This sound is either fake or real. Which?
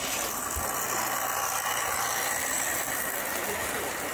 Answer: real